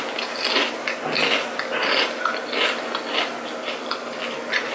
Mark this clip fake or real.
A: real